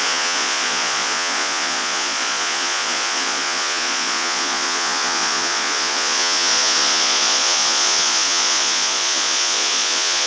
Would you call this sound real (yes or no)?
no